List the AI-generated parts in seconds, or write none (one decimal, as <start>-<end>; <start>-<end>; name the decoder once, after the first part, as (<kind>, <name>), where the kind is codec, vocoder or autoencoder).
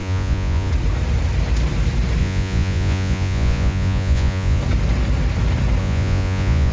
0.0-0.7 (vocoder, Vocos); 2.2-4.6; 5.8-6.7